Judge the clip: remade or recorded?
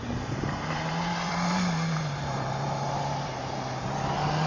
remade